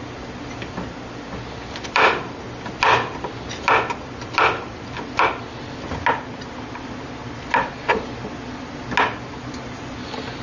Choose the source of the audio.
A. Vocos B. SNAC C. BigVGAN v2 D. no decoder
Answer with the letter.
D